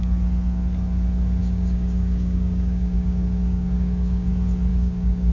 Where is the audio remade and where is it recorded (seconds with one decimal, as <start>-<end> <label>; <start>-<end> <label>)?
0.0-1.4 recorded; 1.4-4.3 remade; 4.3-4.7 recorded; 4.7-5.3 remade